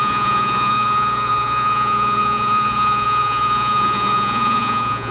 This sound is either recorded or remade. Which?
remade